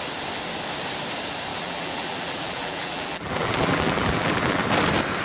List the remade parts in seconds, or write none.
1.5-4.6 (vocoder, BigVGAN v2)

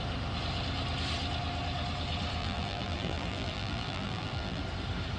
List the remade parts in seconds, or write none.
2.4-4.6 (vocoder, BigVGAN v2)

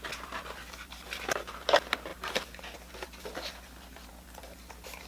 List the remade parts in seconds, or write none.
none

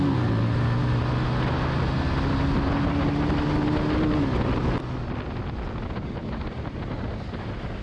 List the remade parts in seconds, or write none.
none

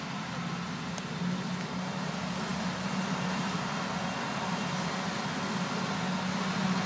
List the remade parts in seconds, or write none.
2.5-5.2 (vocoder, BigVGAN v2)

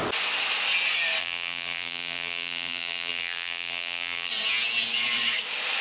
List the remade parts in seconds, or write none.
1.2-4.3 (vocoder, BigVGAN v2)

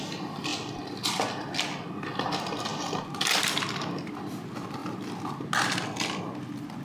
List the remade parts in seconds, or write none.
2.7-3.5 (vocoder, BigVGAN v2)